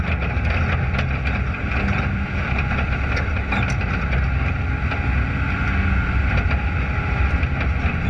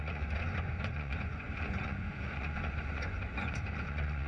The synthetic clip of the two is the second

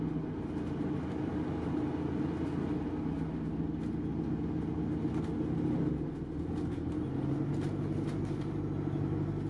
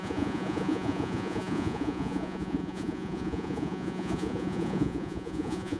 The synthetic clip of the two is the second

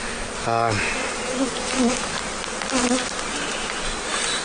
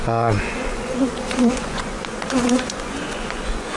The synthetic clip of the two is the second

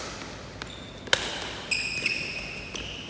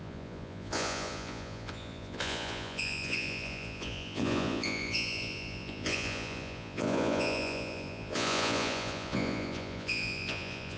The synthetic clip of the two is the second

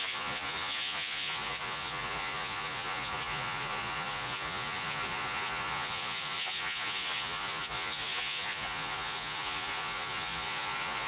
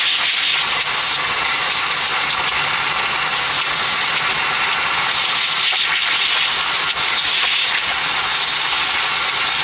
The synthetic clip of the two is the first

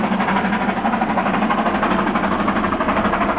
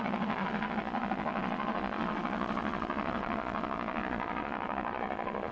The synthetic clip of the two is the second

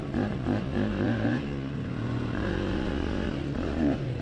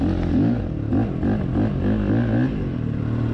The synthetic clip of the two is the first